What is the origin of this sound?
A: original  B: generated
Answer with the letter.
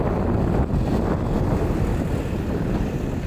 A